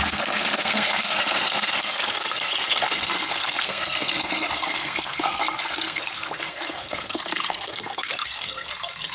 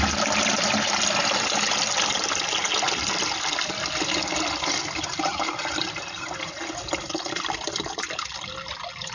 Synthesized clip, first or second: first